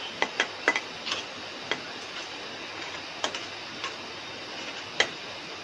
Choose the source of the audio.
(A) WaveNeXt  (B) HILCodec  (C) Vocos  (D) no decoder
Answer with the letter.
D